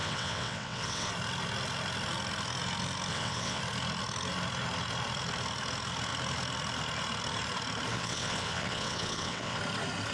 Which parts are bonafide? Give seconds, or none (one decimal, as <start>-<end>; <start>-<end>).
1.1-3.1; 3.6-7.9; 9.6-10.1